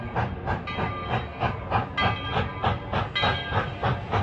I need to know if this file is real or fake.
real